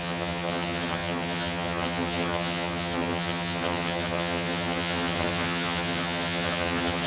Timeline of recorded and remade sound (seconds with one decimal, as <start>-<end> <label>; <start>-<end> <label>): 0.0-7.1 remade